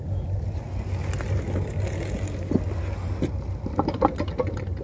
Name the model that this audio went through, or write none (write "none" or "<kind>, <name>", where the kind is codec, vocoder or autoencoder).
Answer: none